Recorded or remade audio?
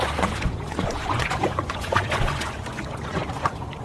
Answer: remade